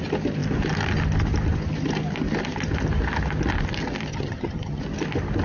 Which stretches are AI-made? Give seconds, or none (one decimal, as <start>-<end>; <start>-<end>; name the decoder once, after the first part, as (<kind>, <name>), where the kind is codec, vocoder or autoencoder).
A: 4.1-4.8 (vocoder, HiFi-GAN)